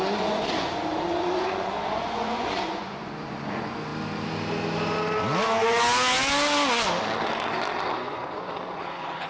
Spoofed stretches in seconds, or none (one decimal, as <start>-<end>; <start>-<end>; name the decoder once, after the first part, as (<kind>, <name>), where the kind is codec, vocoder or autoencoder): 0.0-3.9 (vocoder, Vocos); 7.9-9.3